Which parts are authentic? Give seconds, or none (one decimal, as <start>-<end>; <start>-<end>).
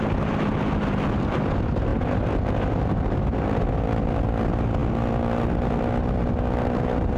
0.0-7.2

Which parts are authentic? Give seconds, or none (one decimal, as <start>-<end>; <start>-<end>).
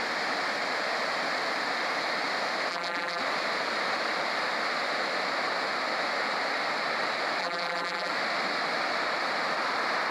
0.0-2.7; 3.2-7.4; 8.1-10.1